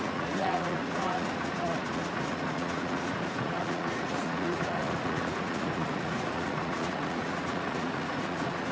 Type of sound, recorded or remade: remade